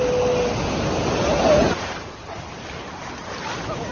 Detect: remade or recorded recorded